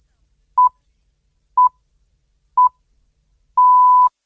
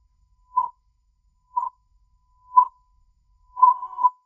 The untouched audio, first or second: first